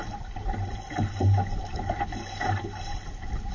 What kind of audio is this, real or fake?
real